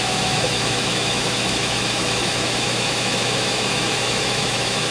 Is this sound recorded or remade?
remade